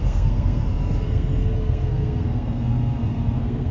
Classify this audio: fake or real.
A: fake